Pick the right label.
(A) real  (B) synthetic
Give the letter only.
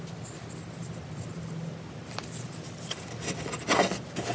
A